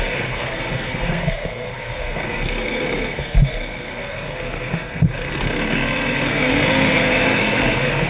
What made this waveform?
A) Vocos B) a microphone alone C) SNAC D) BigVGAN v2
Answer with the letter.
C